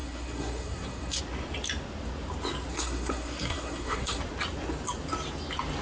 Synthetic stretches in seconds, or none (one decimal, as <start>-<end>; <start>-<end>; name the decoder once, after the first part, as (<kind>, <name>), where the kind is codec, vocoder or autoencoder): 0.0-1.2 (codec, SNAC); 2.7-4.2